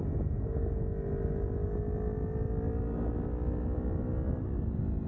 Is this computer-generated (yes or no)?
no